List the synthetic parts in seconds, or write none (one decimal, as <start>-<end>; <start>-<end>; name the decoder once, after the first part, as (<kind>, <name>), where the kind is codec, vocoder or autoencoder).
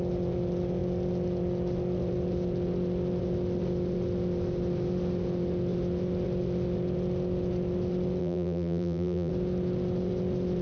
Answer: 8.2-9.3 (vocoder, BigVGAN v2)